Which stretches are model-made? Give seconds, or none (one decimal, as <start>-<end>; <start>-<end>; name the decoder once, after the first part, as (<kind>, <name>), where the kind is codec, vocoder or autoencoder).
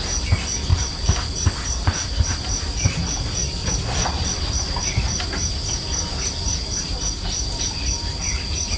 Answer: 0.7-2.4 (vocoder, BigVGAN v2); 3.6-7.6; 8.1-8.8